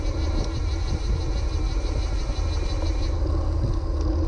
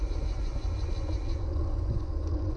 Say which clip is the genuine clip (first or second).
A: first